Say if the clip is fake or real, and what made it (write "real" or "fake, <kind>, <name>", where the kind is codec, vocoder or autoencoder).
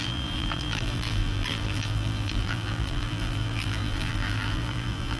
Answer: fake, vocoder, BigVGAN v2